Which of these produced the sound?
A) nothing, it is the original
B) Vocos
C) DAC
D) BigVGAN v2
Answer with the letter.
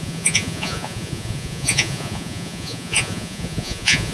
B